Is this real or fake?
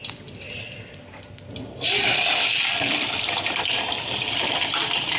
real